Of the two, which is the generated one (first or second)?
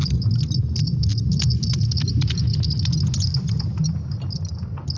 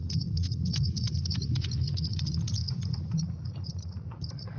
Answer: second